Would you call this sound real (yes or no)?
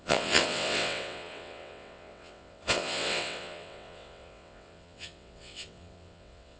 no